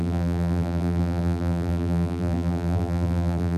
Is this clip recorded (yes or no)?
no